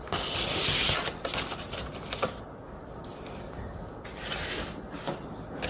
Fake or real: real